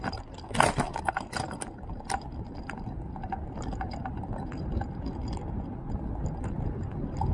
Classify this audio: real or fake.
real